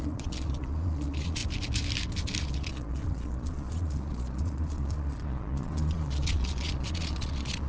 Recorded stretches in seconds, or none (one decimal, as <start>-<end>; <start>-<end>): 1.4-2.4